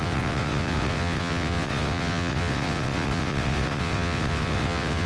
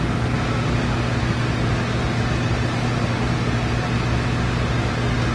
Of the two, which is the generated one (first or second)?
first